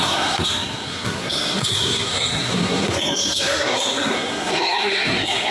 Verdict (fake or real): fake